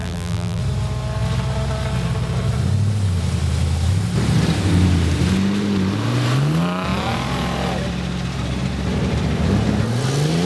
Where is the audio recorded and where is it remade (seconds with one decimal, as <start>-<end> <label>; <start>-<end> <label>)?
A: 0.0-0.6 remade; 0.6-10.4 recorded